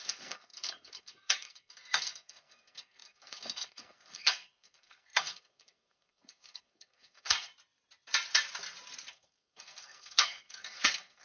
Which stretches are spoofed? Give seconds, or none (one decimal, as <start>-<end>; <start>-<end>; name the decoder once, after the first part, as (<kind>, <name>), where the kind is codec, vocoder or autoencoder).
0.0-7.5 (codec, SNAC); 9.1-11.2